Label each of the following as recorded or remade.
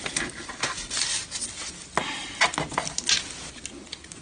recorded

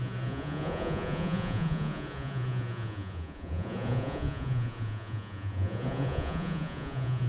remade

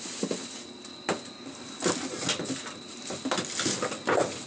recorded